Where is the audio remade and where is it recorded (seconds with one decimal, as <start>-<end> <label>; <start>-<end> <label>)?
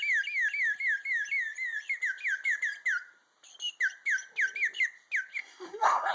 0.0-5.4 recorded; 5.4-6.1 remade